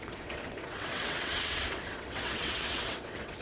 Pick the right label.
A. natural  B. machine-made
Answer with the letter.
B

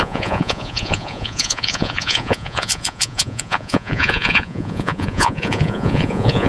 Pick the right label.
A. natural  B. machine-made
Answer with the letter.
B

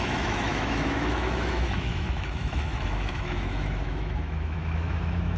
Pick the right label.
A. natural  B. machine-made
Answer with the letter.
B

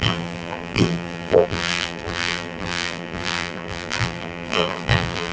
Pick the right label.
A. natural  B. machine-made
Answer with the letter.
B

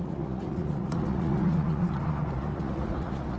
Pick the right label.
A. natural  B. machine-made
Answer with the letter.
B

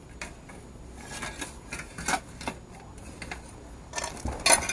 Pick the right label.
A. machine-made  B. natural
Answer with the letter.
B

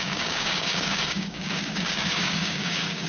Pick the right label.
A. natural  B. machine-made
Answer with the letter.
B